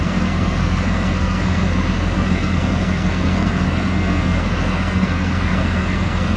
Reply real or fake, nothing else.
fake